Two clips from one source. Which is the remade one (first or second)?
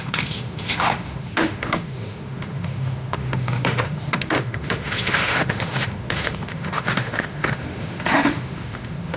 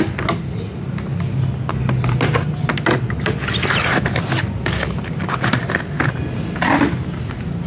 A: first